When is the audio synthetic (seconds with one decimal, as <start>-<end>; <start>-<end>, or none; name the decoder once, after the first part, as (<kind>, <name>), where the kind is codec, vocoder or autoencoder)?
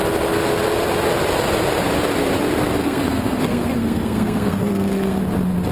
2.8-5.2 (codec, SNAC)